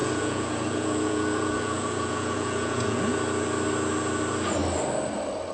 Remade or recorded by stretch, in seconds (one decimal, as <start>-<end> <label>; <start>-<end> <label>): 0.0-3.0 remade; 3.0-5.5 recorded